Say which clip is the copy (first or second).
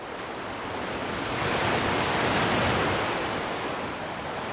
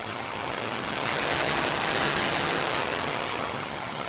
second